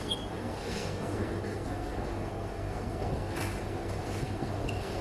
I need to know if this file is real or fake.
fake